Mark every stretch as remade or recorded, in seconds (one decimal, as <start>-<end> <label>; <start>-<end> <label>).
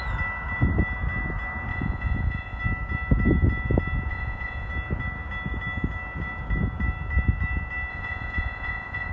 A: 0.0-1.7 recorded; 1.7-2.6 remade; 2.6-4.1 recorded; 4.1-4.7 remade; 4.7-7.9 recorded; 7.9-9.1 remade